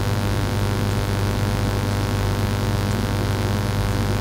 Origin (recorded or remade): recorded